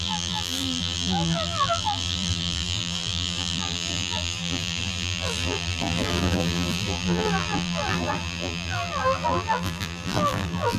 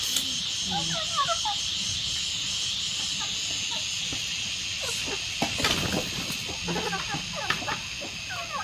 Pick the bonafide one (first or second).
second